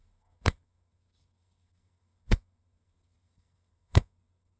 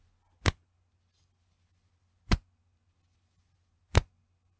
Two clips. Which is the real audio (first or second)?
second